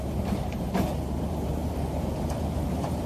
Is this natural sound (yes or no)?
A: no